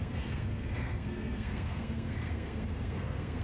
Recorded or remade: remade